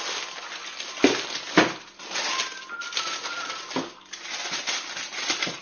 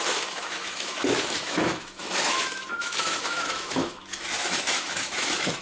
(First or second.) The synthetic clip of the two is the second